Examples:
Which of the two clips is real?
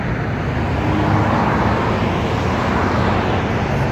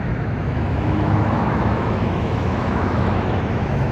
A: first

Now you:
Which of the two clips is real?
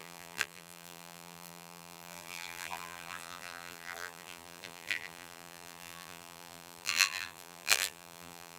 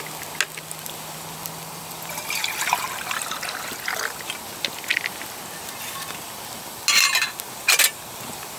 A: second